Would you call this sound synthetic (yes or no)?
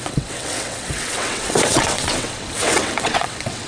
yes